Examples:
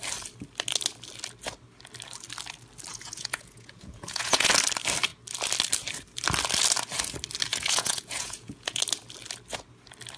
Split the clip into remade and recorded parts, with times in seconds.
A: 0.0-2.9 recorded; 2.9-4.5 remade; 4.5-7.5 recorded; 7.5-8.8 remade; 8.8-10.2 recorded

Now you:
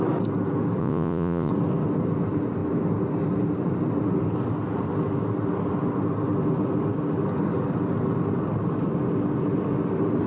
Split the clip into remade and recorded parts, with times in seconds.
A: 0.0-0.8 recorded; 0.8-1.5 remade; 1.5-10.3 recorded

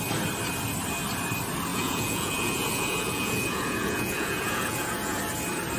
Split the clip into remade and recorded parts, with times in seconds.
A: 0.0-1.7 recorded; 1.7-5.2 remade; 5.2-5.8 recorded

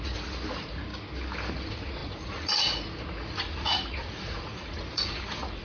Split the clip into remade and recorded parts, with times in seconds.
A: 0.0-0.9 remade; 0.9-1.5 recorded; 1.5-5.6 remade